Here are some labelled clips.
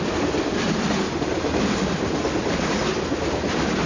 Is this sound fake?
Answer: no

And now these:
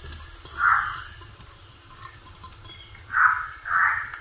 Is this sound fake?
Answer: no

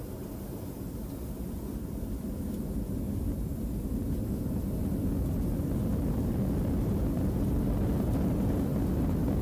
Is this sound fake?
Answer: no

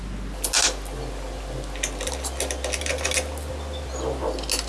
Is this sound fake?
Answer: no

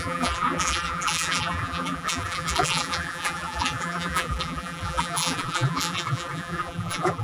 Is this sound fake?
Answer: yes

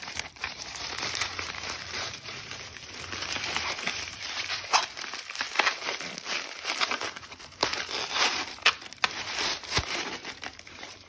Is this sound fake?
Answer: yes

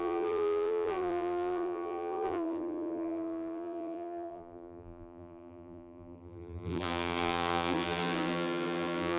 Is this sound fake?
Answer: yes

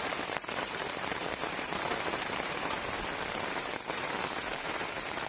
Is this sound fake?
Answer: yes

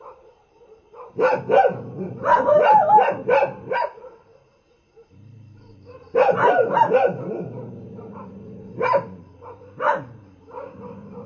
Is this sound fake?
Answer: yes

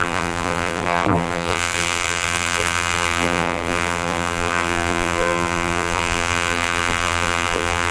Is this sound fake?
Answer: yes